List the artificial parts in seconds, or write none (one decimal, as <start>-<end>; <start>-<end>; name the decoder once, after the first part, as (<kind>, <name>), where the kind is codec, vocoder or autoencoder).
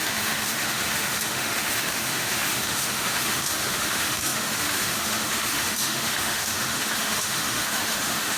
0.0-8.4 (autoencoder, DAC-VAE)